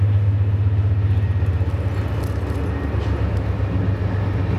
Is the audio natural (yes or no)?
yes